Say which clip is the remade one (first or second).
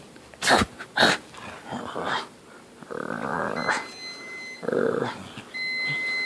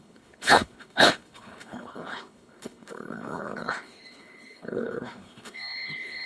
second